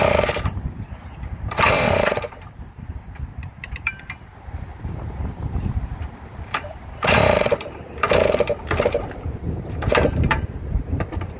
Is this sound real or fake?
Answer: fake